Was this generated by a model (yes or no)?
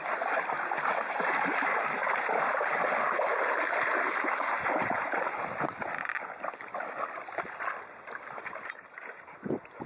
no